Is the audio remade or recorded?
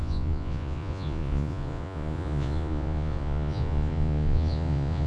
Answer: remade